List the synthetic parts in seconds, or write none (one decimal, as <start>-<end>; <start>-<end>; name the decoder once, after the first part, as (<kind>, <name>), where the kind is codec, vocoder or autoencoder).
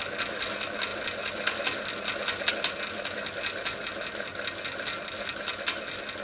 none